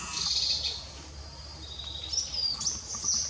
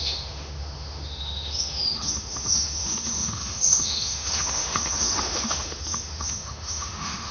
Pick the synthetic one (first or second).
second